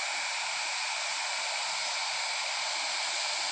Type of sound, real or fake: real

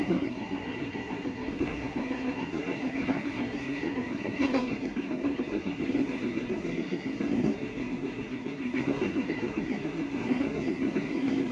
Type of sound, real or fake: fake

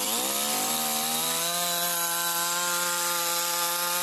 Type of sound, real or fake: real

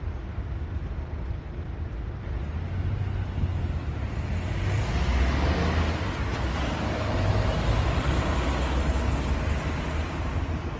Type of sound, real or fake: real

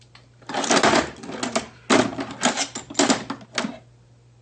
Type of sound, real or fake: real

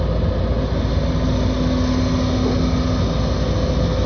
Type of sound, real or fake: real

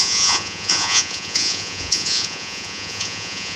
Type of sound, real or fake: fake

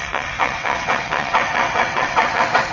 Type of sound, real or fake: fake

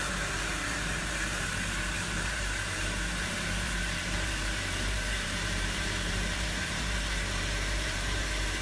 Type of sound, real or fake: fake